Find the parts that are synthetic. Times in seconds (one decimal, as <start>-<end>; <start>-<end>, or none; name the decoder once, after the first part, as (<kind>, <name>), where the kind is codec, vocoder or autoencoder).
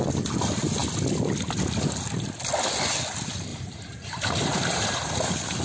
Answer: 3.5-5.6 (vocoder, BigVGAN v2)